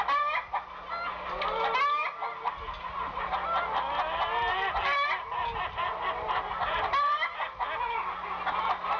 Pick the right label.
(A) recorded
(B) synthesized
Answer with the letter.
A